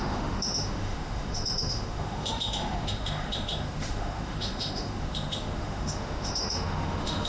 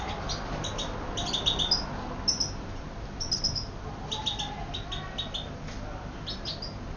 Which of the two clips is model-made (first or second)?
first